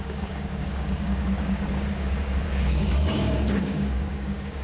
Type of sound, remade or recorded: remade